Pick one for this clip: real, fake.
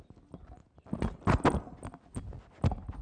real